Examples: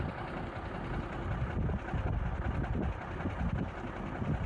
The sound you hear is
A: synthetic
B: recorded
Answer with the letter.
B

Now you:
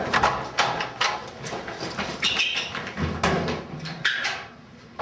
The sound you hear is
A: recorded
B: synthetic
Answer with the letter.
A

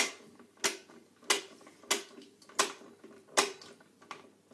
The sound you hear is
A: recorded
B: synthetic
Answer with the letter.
A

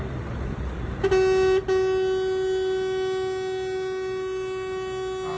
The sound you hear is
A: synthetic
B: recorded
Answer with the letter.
B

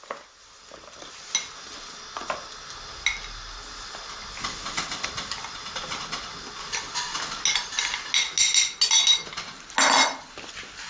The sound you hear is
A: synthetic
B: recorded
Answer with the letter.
B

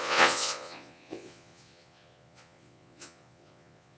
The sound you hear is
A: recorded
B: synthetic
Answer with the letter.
B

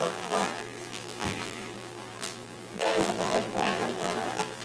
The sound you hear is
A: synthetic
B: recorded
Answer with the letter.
A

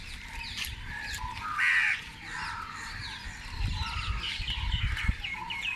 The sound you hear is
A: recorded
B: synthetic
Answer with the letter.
B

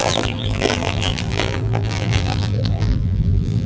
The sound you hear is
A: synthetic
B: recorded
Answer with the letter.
A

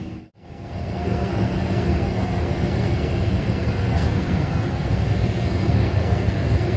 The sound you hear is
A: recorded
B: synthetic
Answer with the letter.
B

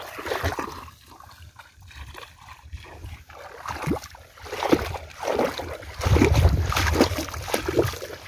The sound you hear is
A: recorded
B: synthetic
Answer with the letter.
A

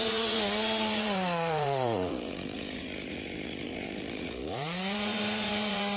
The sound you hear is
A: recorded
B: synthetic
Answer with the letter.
B